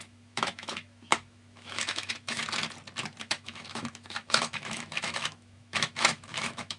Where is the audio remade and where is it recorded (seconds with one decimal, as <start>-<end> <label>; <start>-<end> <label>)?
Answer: 0.0-2.4 remade; 2.4-3.2 recorded; 3.2-6.8 remade

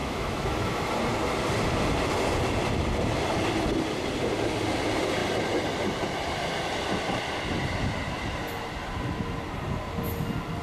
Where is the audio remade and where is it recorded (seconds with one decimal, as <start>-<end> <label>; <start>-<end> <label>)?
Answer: 0.0-0.9 remade; 0.9-10.6 recorded